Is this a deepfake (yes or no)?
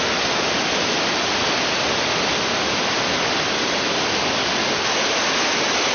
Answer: no